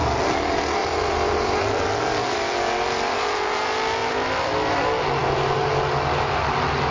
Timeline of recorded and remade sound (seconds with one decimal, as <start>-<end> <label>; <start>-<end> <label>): 0.0-0.8 recorded; 0.8-3.6 remade; 3.6-4.0 recorded; 4.0-4.8 remade; 4.8-5.2 recorded; 5.2-5.7 remade; 5.7-6.9 recorded